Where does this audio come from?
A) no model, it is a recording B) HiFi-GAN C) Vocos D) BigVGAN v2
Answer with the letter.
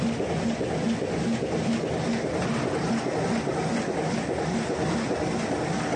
A